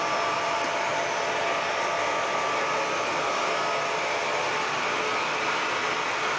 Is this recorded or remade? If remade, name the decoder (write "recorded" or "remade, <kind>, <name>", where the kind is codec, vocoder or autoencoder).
recorded